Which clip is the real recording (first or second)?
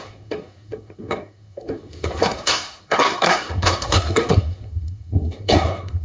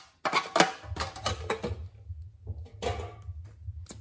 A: second